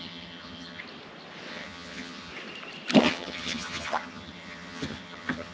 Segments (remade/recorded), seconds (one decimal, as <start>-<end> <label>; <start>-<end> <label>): 0.0-0.8 remade; 0.8-1.5 recorded; 1.5-2.3 remade; 2.3-3.0 recorded; 3.0-5.5 remade